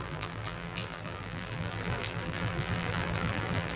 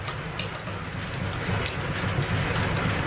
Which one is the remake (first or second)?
first